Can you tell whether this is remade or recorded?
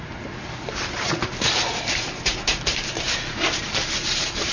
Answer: remade